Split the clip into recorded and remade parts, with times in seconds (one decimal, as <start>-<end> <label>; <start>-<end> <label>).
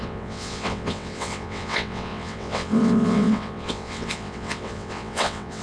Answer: 0.0-5.6 remade